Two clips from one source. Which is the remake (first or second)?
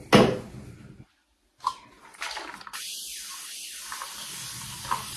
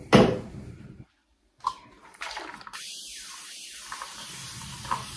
second